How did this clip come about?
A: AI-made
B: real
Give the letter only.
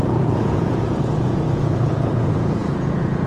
A